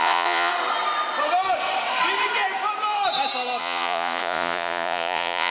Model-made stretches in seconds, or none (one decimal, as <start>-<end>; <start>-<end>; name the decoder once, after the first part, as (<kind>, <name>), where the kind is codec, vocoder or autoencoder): 0.0-0.5 (vocoder, Vocos); 3.6-5.5